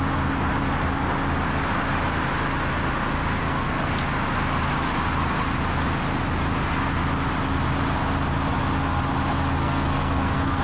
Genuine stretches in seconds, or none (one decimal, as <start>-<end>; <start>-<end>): 0.0-3.4; 3.9-9.6

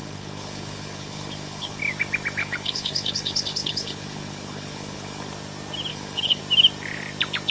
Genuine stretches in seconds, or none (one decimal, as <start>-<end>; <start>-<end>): 1.8-2.4; 5.3-5.9; 6.4-7.5